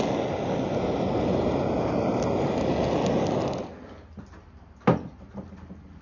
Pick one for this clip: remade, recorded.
recorded